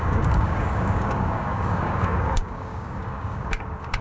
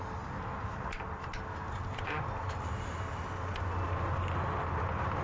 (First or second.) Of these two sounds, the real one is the second